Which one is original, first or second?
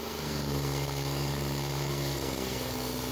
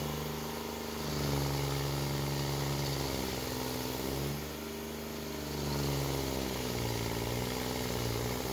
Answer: second